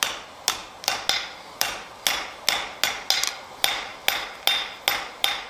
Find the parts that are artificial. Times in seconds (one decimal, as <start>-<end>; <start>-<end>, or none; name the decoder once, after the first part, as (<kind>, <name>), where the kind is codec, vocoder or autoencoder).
none